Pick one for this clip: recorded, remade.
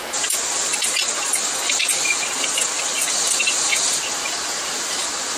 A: recorded